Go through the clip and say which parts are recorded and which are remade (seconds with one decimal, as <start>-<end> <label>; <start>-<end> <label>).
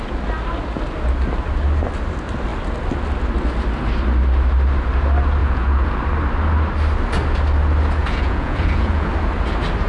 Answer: 0.0-5.4 recorded; 5.4-6.0 remade; 6.0-8.0 recorded; 8.0-9.1 remade; 9.1-9.9 recorded